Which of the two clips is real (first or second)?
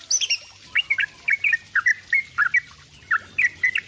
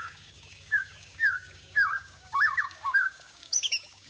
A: first